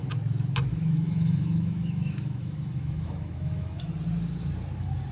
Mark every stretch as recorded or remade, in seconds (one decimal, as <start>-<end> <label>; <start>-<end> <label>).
0.0-0.7 recorded; 0.7-3.8 remade; 3.8-5.1 recorded